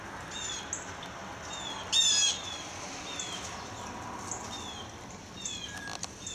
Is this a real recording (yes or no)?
yes